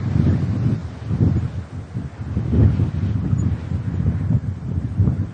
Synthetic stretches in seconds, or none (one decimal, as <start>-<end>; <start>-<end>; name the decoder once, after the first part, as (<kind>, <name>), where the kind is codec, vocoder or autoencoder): 0.0-0.8 (vocoder, BigVGAN v2); 4.0-5.3